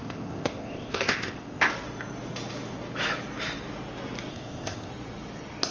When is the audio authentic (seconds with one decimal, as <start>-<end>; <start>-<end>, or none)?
1.7-4.3; 4.9-5.7